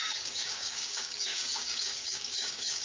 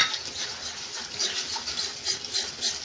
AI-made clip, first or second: first